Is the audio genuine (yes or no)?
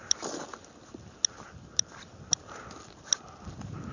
yes